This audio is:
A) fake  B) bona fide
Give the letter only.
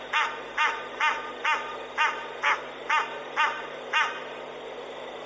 B